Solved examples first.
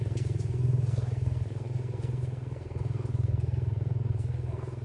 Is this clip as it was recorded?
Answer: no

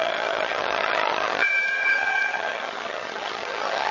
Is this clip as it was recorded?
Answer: no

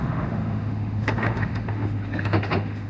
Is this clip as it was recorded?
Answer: no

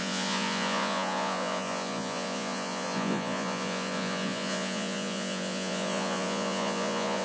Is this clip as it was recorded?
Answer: no